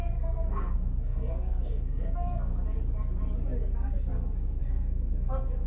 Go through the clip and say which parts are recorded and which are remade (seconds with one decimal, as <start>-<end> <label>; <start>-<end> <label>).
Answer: 0.0-2.5 remade; 2.5-3.6 recorded; 3.6-5.7 remade